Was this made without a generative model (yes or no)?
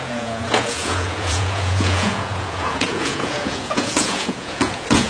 no